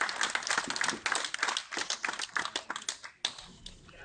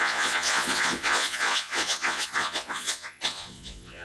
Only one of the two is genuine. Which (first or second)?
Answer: first